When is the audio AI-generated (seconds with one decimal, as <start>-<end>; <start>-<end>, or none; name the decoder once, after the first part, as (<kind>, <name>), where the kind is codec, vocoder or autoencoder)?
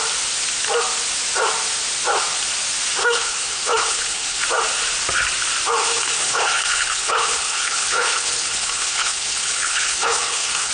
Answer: 3.0-4.4 (codec, HILCodec); 5.8-10.7